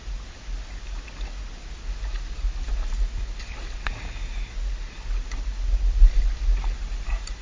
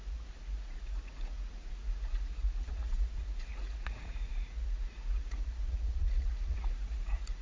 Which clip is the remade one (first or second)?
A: second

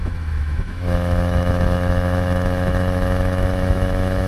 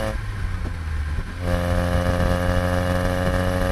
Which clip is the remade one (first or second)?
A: first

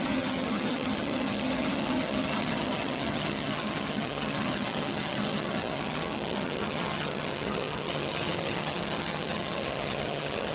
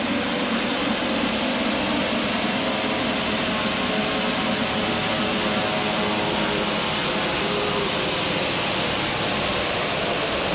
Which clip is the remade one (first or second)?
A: first